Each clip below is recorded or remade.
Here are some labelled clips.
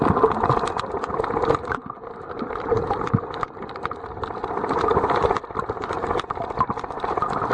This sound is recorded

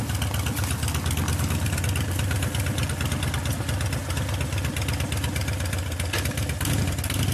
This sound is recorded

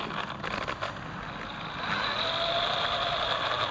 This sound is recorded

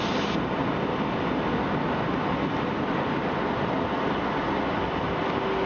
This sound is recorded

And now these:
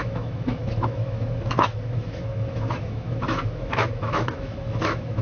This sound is remade